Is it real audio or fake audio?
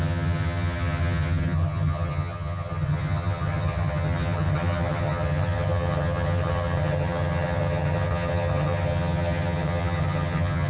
fake